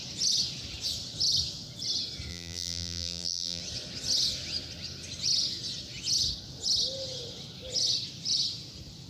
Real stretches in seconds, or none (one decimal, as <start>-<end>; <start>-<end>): 0.0-2.3; 3.6-9.1

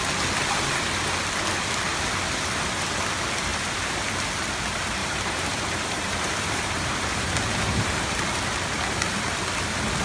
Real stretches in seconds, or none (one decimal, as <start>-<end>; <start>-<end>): 0.0-5.0; 8.4-10.0

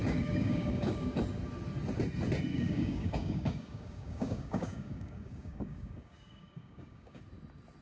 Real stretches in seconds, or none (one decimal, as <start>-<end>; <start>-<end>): 1.2-2.5; 7.2-7.8

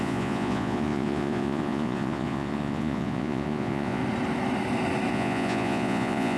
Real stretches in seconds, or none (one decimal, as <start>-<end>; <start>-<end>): 4.0-5.1

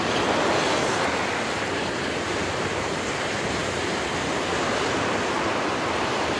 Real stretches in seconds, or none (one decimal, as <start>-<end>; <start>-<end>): 0.0-6.4

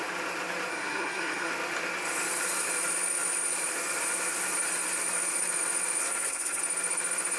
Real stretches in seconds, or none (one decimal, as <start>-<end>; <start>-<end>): 0.0-0.7; 1.5-6.0; 6.6-7.4